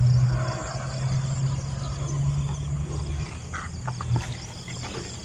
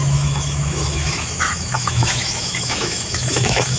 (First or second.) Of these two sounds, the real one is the first